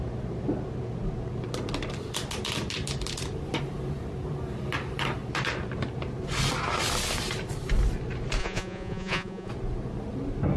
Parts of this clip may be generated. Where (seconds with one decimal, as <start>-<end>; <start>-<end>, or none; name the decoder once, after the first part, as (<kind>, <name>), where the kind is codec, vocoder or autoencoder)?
8.4-9.5 (vocoder, Vocos)